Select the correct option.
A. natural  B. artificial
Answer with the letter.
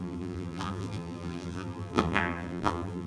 B